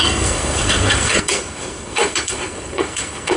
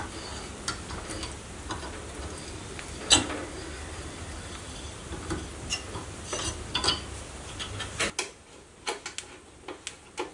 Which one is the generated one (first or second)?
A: first